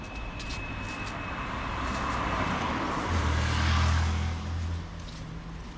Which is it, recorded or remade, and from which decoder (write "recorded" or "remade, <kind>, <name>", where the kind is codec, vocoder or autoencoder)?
recorded